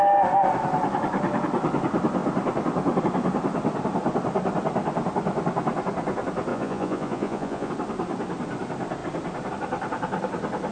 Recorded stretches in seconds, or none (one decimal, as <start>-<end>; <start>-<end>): 0.0-6.5; 7.7-10.7